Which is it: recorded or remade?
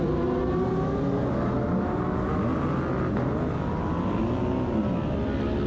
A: recorded